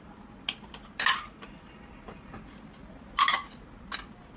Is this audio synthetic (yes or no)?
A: no